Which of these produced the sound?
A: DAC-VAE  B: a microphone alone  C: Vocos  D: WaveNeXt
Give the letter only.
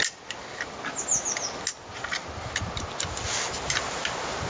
B